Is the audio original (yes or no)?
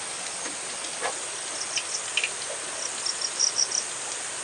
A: yes